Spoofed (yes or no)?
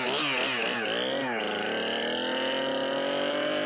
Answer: no